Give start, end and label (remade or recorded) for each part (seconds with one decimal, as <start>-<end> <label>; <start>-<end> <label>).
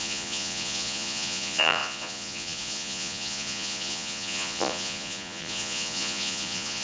0.0-6.8 remade